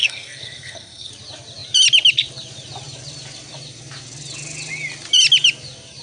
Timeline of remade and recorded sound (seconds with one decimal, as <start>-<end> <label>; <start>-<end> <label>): 0.0-1.1 remade; 1.1-6.0 recorded